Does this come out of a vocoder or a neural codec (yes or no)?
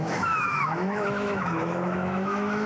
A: yes